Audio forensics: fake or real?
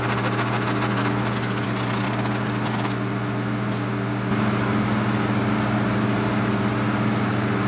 real